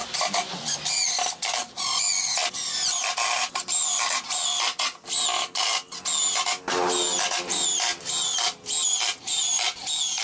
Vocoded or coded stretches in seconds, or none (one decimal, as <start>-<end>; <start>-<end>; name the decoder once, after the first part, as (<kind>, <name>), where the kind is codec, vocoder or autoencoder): none